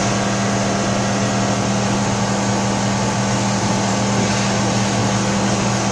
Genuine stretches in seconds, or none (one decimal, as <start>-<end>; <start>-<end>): 0.0-5.9